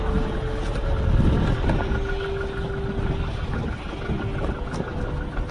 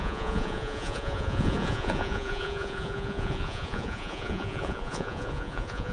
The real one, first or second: first